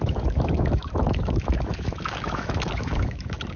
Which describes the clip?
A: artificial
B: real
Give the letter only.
A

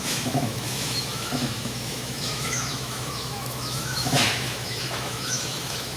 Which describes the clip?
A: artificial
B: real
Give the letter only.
A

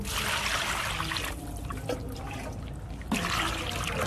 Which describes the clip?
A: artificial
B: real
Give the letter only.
B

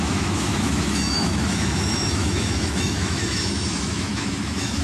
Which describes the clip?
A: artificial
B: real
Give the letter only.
A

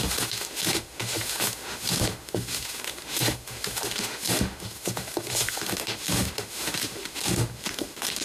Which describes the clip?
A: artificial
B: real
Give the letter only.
A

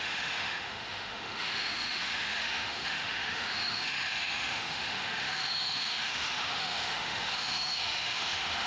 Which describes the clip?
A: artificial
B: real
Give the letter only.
A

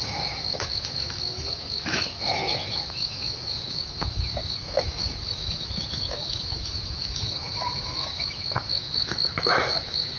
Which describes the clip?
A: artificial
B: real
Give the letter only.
A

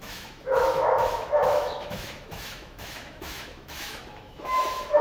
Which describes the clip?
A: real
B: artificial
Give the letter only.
B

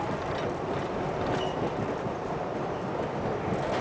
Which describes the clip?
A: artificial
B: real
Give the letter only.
B